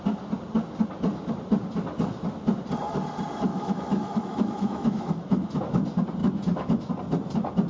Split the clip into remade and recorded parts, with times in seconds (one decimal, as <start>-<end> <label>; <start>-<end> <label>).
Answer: 0.0-3.5 recorded; 3.5-5.6 remade; 5.6-6.2 recorded; 6.2-6.9 remade; 6.9-7.7 recorded